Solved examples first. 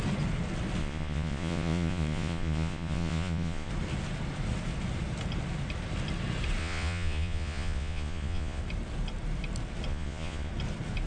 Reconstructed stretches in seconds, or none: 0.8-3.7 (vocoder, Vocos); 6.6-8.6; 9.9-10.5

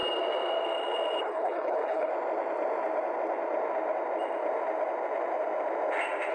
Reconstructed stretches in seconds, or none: 1.2-2.1 (codec, HILCodec)

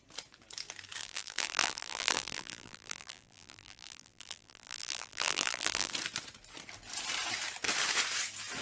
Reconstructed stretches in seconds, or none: 1.0-5.9 (vocoder, BigVGAN v2)

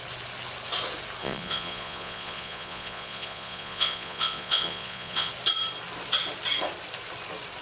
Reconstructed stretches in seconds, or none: 1.2-5.3 (vocoder, Vocos)

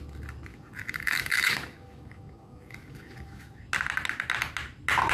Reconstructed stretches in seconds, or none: 0.5-3.6 (codec, DAC)

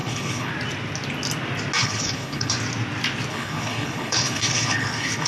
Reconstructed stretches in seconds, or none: 0.0-0.5 (codec, HILCodec); 1.8-2.5; 3.3-5.3

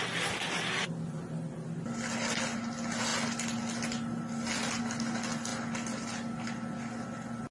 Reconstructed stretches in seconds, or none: none